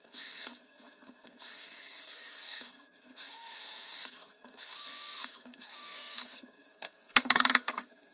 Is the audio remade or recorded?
remade